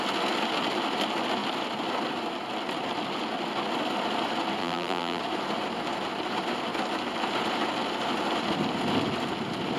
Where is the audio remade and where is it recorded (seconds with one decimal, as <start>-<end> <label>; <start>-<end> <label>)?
0.0-4.6 recorded; 4.6-5.2 remade; 5.2-9.8 recorded